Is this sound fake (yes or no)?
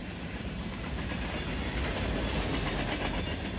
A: no